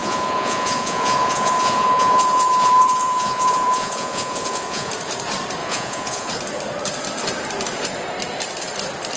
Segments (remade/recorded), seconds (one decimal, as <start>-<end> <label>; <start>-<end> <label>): 0.0-4.9 remade; 4.9-5.6 recorded; 5.6-6.3 remade; 6.3-9.2 recorded